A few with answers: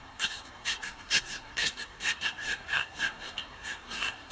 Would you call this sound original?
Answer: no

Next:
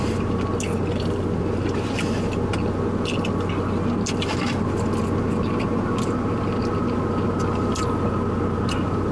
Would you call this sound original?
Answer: yes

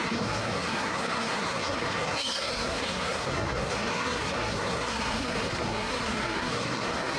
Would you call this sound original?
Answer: no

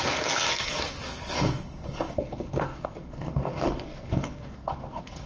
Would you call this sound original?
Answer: no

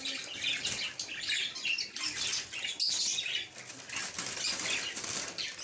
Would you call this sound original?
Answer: yes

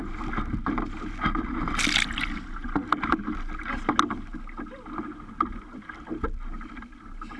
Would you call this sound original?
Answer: yes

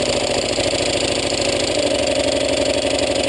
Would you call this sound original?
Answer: yes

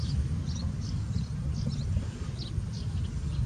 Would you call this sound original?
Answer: yes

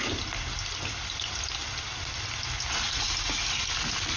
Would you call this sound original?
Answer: yes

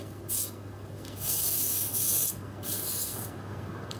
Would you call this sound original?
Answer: no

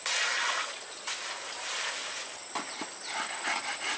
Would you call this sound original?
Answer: yes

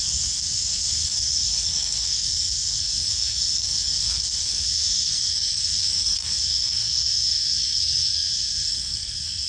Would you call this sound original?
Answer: no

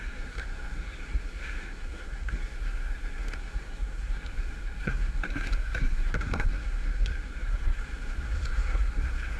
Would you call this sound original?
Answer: no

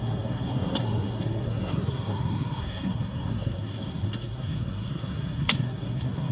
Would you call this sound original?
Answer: no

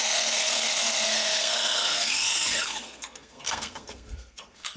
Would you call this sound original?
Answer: no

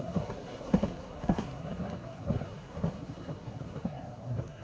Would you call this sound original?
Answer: no